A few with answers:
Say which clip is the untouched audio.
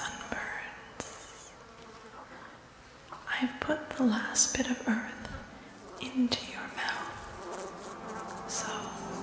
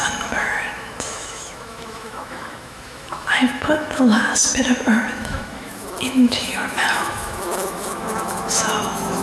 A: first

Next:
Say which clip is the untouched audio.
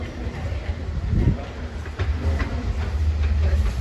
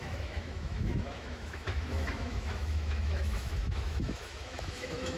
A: first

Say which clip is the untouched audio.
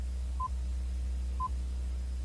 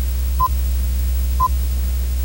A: first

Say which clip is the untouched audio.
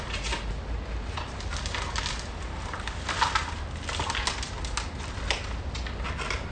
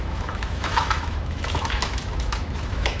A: first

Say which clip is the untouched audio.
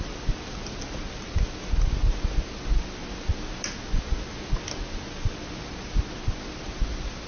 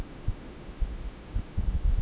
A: first